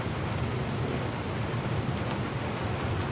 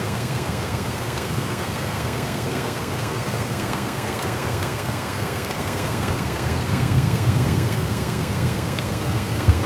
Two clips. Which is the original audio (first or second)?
first